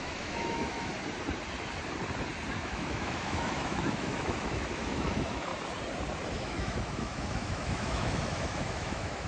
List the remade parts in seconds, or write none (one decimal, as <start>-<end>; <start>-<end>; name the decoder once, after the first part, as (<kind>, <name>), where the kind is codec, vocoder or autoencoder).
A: 0.0-0.9 (autoencoder, DAC-VAE); 2.6-5.5; 6.3-9.3